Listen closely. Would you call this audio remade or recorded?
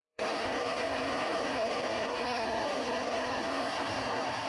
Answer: remade